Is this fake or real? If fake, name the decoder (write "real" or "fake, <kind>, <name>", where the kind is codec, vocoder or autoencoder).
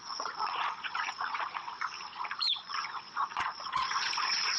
fake, vocoder, Vocos